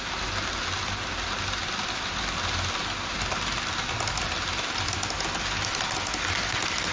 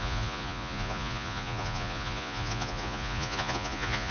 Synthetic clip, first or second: second